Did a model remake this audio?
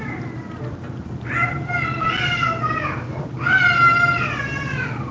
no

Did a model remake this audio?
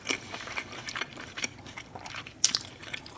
yes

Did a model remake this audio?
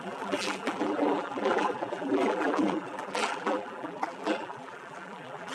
yes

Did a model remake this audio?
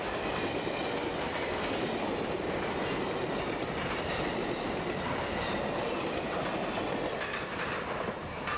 no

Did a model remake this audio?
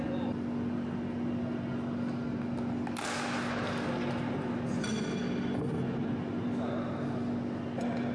no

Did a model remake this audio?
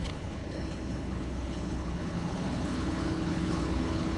yes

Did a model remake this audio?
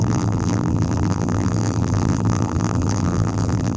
yes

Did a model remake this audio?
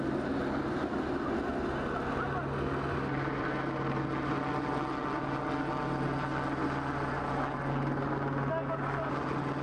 no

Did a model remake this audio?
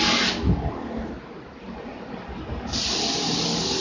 no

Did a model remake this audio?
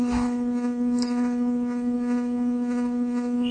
no